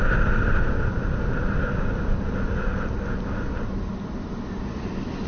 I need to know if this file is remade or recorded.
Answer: recorded